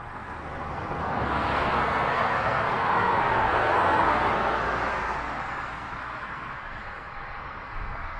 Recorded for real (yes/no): no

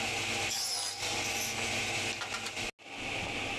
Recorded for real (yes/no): yes